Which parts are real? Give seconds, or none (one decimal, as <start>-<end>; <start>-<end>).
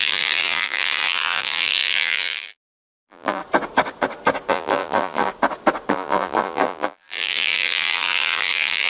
3.4-4.5; 5.3-5.9